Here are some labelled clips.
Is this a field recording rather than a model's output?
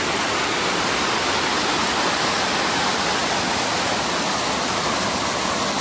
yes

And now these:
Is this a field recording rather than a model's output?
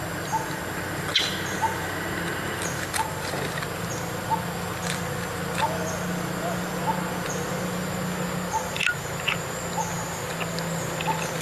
yes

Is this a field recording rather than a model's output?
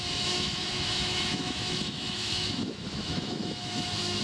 no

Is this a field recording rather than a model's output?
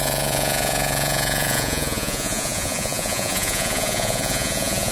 no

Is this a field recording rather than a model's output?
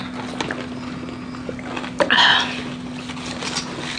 yes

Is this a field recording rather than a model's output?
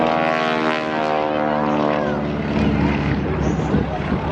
yes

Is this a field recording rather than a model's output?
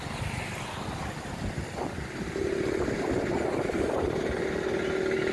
yes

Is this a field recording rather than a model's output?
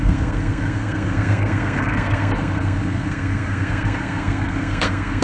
no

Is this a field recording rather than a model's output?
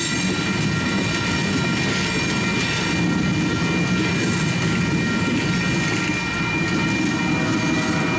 yes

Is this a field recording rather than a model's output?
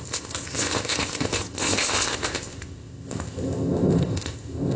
no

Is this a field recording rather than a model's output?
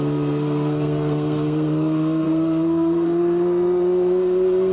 no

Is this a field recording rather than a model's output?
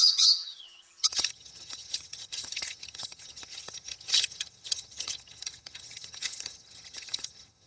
no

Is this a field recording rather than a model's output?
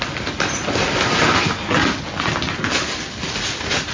yes